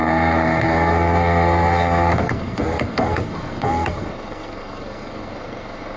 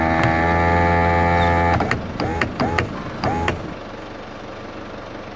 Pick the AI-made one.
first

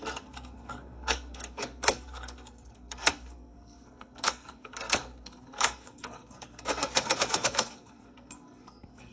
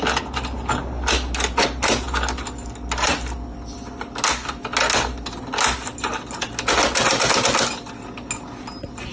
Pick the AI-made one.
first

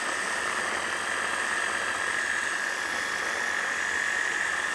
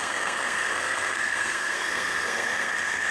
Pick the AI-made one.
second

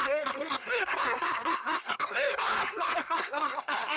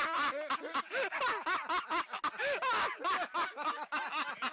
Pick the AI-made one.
first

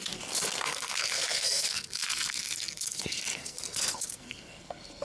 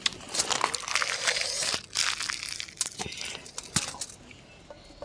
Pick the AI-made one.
first